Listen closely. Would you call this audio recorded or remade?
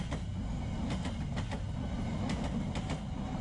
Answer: recorded